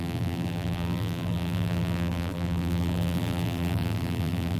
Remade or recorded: remade